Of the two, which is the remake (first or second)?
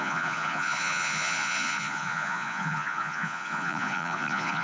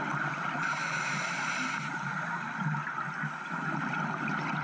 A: first